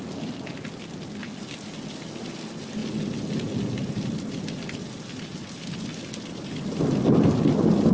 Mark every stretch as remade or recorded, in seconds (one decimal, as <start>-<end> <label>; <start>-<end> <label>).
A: 0.0-7.9 recorded

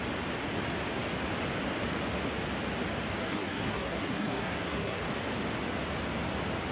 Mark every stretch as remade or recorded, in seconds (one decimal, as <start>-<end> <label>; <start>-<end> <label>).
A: 0.0-3.2 recorded; 3.2-5.0 remade; 5.0-6.7 recorded